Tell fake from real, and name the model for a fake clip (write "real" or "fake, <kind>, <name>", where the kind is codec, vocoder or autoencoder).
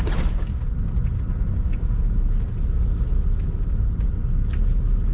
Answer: real